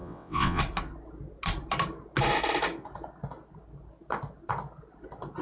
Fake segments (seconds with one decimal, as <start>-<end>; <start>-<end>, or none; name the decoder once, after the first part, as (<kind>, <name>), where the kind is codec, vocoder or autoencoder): 0.0-0.6 (vocoder, WaveNeXt)